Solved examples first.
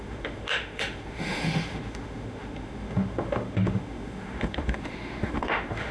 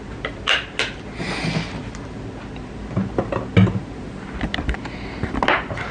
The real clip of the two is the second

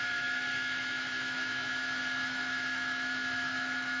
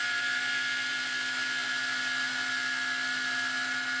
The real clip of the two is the second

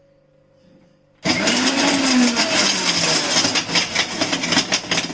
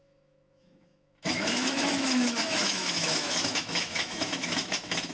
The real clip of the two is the first